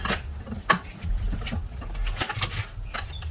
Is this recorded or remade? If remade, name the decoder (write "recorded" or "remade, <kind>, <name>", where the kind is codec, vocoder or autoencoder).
recorded